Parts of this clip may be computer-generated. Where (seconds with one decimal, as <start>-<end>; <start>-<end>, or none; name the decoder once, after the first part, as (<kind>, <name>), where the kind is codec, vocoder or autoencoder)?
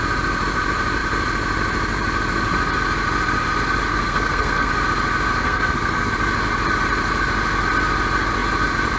3.9-4.7 (codec, SNAC); 5.4-6.1